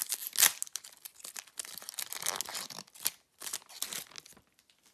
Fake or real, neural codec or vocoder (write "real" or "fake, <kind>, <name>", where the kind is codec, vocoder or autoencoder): real